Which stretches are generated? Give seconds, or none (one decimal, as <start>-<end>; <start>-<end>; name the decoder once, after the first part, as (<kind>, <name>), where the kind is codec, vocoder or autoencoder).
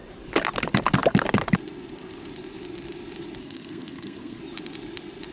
3.4-4.4 (codec, SNAC)